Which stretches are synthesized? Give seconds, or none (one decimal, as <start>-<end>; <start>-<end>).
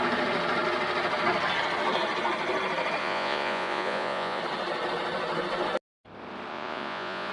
3.0-4.4; 6.5-7.3